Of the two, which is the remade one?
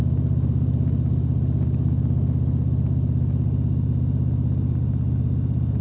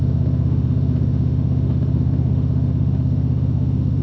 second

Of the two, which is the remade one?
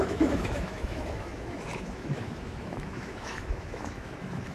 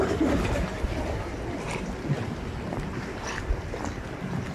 first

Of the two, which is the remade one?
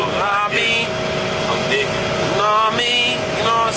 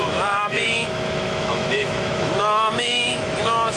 second